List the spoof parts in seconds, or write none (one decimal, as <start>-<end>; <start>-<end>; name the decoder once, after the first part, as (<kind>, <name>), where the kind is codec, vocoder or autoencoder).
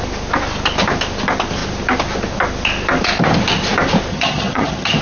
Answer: 4.1-5.0 (vocoder, HiFi-GAN)